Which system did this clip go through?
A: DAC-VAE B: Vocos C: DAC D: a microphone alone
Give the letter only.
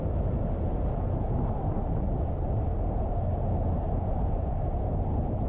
D